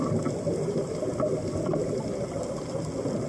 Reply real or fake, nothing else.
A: real